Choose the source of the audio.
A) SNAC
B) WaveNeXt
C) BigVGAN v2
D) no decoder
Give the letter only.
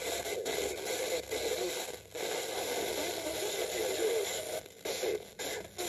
D